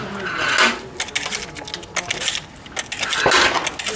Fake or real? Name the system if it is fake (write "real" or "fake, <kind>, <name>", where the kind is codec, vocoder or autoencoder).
real